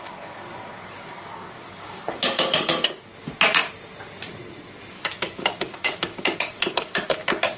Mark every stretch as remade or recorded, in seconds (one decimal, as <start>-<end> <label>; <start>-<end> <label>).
0.0-3.1 remade; 3.1-4.9 recorded; 4.9-7.6 remade